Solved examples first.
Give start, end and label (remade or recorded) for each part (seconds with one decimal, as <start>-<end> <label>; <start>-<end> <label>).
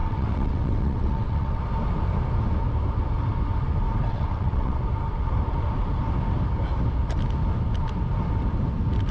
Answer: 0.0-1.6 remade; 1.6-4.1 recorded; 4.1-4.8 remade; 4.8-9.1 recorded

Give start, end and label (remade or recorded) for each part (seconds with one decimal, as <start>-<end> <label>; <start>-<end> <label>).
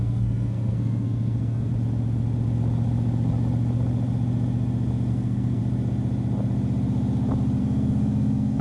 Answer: 0.0-1.7 remade; 1.7-5.1 recorded; 5.1-5.6 remade; 5.6-7.6 recorded; 7.6-8.6 remade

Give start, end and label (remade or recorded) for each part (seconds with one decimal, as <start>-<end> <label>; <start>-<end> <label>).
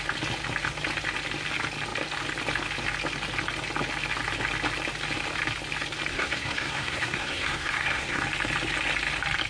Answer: 0.0-6.1 recorded; 6.1-8.2 remade; 8.2-9.5 recorded